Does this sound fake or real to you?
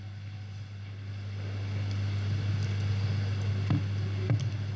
real